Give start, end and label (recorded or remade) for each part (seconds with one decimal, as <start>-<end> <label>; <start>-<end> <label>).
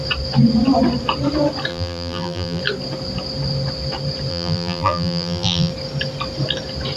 0.0-1.7 recorded; 1.7-2.6 remade; 2.6-4.3 recorded; 4.3-5.7 remade; 5.7-7.0 recorded